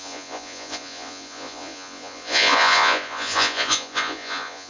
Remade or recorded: remade